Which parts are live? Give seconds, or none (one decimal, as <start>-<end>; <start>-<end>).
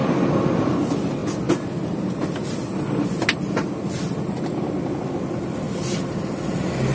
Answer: 0.0-0.6; 1.2-4.8